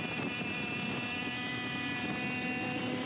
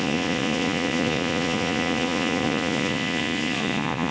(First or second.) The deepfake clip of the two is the second